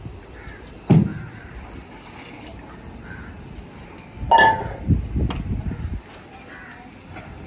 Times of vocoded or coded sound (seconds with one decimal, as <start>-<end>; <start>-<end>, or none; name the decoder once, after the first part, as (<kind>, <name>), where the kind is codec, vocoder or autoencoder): none